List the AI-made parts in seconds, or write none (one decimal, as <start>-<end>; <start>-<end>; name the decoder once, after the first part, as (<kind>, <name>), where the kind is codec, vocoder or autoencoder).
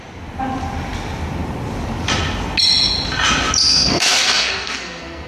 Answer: 3.7-5.3 (codec, SNAC)